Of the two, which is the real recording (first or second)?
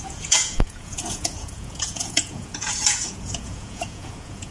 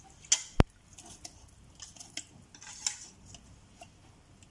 second